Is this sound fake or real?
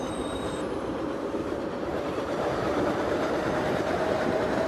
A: fake